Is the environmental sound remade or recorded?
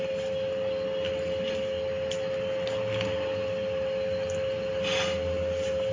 recorded